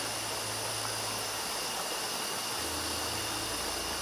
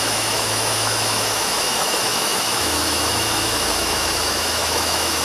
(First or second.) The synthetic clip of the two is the second